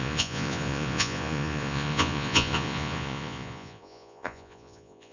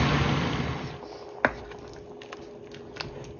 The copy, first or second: first